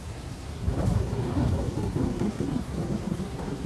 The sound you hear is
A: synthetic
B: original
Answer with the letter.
A